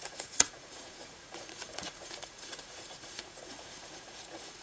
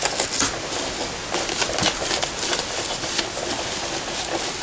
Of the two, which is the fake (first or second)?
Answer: first